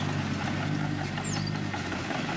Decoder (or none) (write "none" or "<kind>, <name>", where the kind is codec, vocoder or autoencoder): none